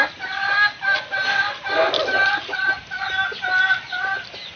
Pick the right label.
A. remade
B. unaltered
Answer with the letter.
B